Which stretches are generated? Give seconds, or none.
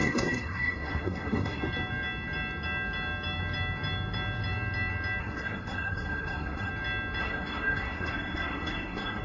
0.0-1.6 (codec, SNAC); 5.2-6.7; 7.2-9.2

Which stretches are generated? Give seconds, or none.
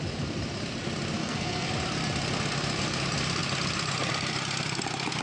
1.2-1.7 (codec, SNAC)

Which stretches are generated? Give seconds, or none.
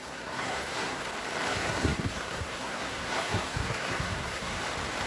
0.0-1.1 (codec, SNAC); 1.5-4.6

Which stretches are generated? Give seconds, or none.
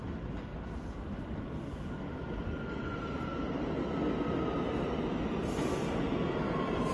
none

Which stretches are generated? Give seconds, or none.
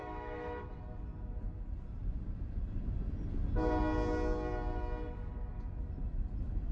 0.0-0.7 (autoencoder, DAC-VAE)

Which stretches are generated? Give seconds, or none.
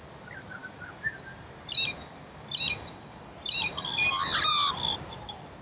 none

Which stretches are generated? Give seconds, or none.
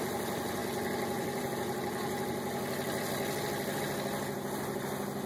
none